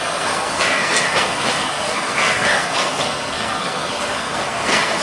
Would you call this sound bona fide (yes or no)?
no